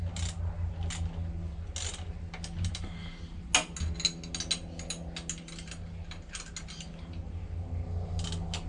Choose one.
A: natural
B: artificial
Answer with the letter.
A